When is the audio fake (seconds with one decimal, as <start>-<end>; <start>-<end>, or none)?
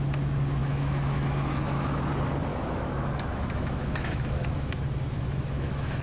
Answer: 0.6-2.1; 2.5-6.0